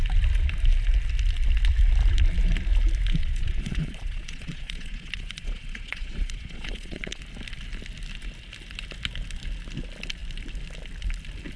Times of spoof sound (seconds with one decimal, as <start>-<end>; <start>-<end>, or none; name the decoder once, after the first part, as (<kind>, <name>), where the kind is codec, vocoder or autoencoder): 3.2-7.2 (vocoder, Vocos)